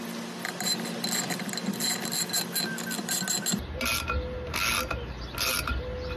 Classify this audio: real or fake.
real